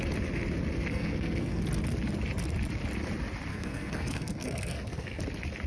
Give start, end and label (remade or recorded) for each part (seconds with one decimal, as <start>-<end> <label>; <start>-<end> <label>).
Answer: 0.0-0.9 recorded; 0.9-1.6 remade; 1.6-3.5 recorded; 3.5-5.2 remade; 5.2-5.7 recorded